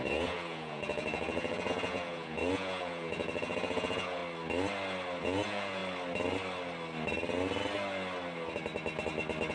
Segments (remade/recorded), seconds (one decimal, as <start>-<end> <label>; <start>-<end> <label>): 0.0-4.2 remade; 4.2-5.2 recorded; 5.2-5.8 remade; 5.8-9.5 recorded